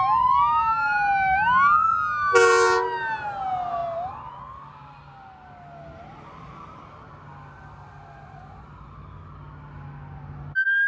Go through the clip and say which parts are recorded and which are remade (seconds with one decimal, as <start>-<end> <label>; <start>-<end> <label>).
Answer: 0.0-10.9 recorded